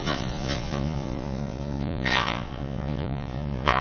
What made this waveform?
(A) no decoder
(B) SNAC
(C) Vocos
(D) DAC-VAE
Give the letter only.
C